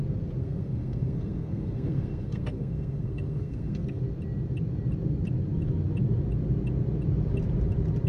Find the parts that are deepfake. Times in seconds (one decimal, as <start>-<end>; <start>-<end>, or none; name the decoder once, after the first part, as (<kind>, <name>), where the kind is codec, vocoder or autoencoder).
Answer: 0.4-4.0 (codec, SNAC)